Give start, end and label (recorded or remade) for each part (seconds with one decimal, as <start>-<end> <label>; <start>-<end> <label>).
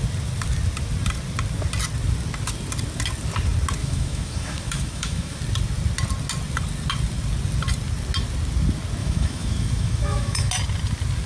0.0-3.8 recorded; 3.8-5.4 remade; 5.4-9.0 recorded; 9.0-10.5 remade; 10.5-11.3 recorded